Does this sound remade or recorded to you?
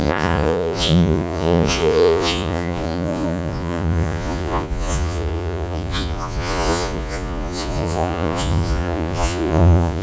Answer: remade